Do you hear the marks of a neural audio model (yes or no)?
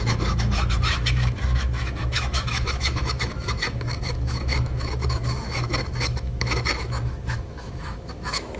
yes